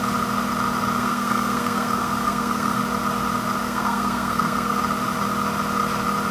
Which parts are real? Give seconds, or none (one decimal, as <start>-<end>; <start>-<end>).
0.0-1.0; 2.8-3.6; 4.8-6.3